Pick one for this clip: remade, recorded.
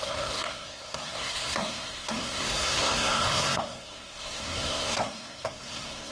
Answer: remade